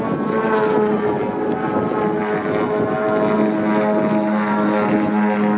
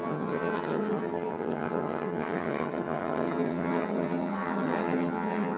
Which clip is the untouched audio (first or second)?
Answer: first